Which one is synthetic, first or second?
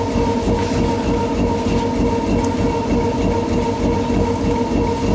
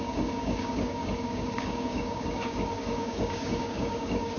second